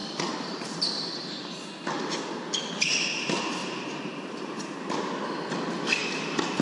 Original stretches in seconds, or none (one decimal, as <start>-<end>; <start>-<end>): 1.4-3.6; 5.1-6.6